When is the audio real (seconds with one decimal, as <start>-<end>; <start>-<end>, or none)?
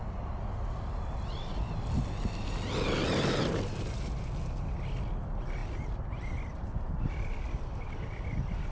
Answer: 0.0-8.7